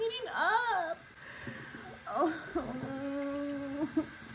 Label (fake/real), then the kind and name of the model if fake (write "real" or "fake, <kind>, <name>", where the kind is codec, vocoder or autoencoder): real